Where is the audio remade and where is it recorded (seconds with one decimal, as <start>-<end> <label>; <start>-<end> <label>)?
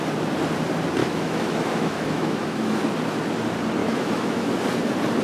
0.0-1.0 recorded; 1.0-2.8 remade; 2.8-3.8 recorded; 3.8-4.5 remade; 4.5-5.2 recorded